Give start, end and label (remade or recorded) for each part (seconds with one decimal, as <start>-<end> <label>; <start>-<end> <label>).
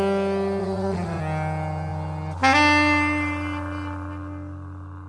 0.0-0.6 recorded; 0.6-1.2 remade; 1.2-5.1 recorded